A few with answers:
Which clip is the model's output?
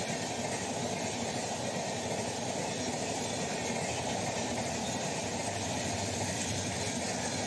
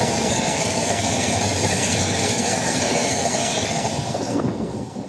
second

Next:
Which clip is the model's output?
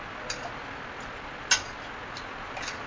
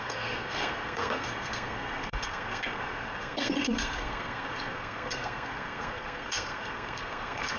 second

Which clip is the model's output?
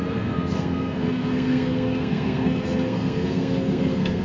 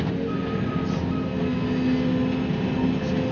first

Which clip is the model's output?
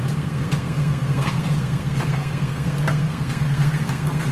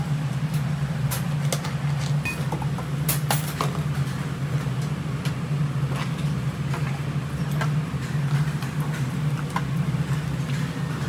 first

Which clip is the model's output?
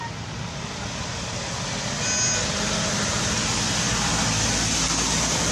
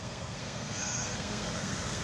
second